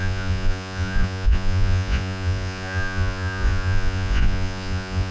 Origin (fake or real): fake